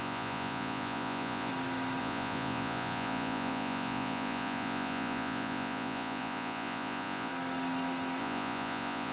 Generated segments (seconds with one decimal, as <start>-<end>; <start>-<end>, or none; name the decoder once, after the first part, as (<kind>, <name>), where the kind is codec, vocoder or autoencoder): 0.0-1.5 (vocoder, Vocos); 2.0-7.3; 8.2-9.1